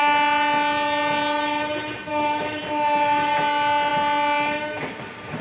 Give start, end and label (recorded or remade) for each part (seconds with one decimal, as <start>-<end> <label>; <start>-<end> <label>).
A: 0.0-2.1 recorded; 2.1-2.6 remade; 2.6-5.4 recorded